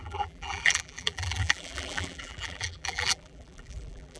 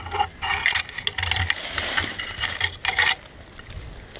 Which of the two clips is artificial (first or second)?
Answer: first